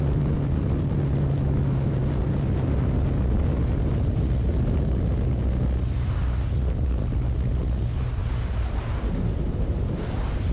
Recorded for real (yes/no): yes